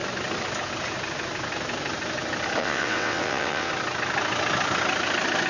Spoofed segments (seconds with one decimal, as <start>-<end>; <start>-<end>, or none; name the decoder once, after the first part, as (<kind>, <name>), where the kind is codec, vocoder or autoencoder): 2.6-3.7 (vocoder, WaveNeXt)